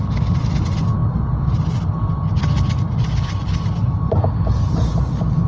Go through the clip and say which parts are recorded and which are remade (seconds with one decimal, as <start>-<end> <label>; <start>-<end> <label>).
0.0-5.5 recorded